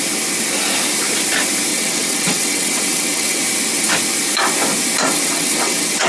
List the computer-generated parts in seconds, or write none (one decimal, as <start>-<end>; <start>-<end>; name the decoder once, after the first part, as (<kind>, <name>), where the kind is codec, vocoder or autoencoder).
1.7-3.4 (vocoder, WaveNeXt); 5.0-6.1